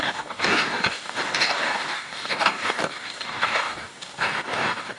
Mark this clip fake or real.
fake